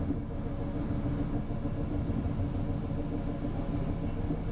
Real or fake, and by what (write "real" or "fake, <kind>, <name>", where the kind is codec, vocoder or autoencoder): real